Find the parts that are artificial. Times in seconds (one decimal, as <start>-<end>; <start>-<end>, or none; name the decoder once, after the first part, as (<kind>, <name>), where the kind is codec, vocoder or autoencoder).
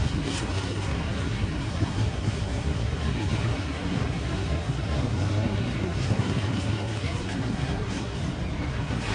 0.0-8.2 (codec, SNAC); 8.7-9.1